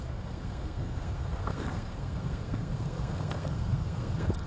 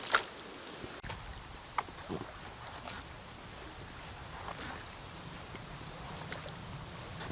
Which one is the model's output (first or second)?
first